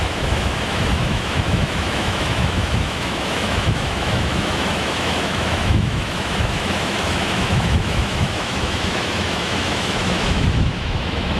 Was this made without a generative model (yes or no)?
no